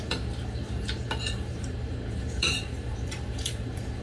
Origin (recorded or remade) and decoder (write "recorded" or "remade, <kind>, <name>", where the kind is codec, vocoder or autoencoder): remade, vocoder, BigVGAN v2